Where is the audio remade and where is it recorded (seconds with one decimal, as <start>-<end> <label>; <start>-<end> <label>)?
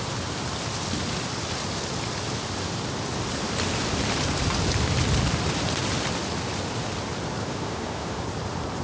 0.0-7.4 recorded; 7.4-8.2 remade; 8.2-8.8 recorded